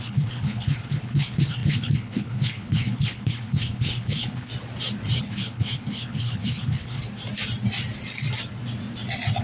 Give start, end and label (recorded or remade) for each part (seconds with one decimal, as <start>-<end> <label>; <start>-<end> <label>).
0.0-4.5 remade; 4.5-5.2 recorded; 5.2-7.0 remade; 7.0-9.4 recorded